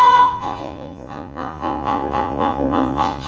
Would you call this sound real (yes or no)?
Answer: no